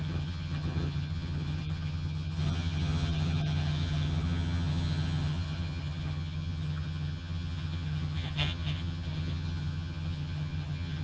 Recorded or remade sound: remade